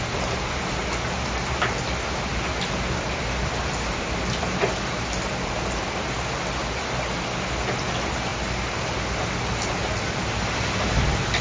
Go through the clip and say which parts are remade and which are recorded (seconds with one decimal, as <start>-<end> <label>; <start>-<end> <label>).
0.0-11.4 recorded